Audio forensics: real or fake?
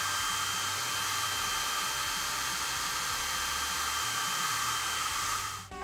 real